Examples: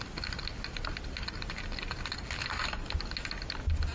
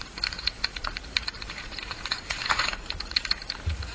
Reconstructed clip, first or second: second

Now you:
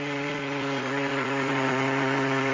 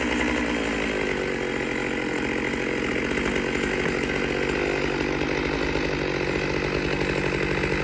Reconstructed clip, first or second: first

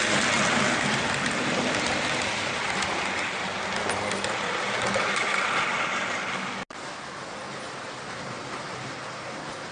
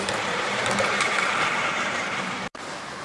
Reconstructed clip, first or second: second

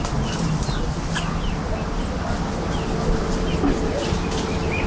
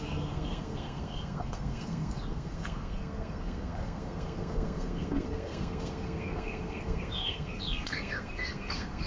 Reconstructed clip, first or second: second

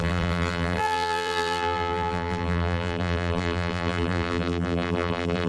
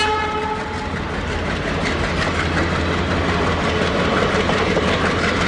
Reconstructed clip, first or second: first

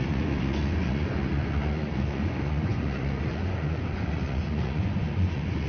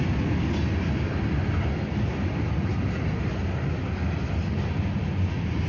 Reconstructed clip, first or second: first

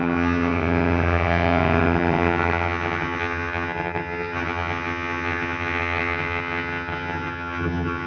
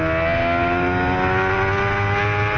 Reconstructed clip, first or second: first